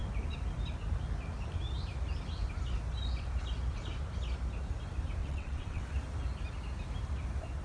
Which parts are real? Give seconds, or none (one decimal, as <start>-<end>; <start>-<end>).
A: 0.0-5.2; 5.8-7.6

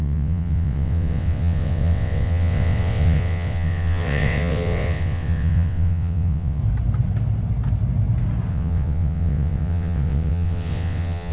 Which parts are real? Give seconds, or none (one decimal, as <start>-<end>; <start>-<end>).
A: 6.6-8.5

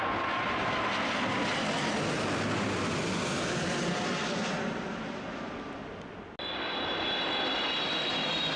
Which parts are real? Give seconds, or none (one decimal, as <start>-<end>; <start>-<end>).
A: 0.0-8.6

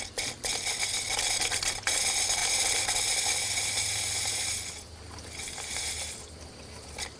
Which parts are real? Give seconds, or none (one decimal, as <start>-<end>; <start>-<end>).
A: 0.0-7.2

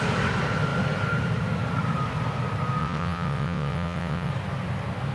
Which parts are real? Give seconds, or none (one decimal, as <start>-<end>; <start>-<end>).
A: 0.0-2.8; 4.3-5.1

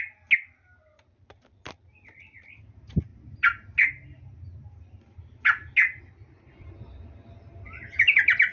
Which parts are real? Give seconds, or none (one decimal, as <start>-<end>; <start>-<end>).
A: 0.0-8.5